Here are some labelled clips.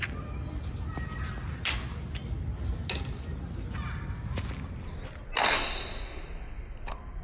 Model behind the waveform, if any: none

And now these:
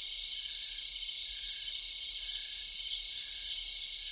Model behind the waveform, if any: none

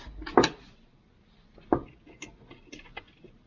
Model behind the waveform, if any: none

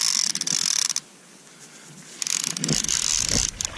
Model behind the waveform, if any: none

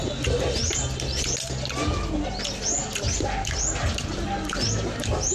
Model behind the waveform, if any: none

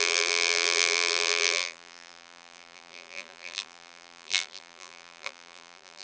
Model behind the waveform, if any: vocoder, BigVGAN v2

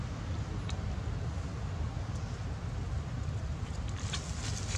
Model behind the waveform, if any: none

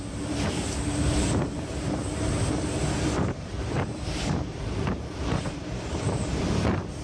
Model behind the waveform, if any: vocoder, BigVGAN v2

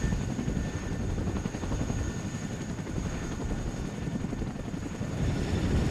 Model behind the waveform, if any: none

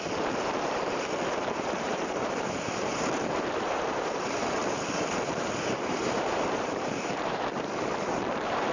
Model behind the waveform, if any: vocoder, BigVGAN v2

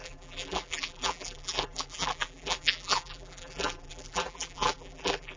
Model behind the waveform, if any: vocoder, BigVGAN v2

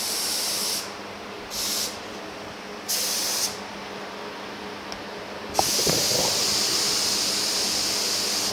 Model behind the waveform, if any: none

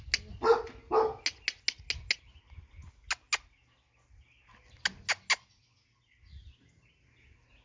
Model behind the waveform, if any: none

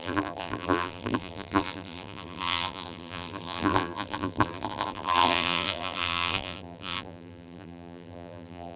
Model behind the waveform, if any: vocoder, BigVGAN v2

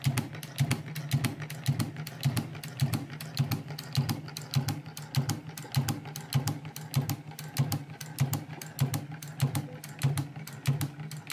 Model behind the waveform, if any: none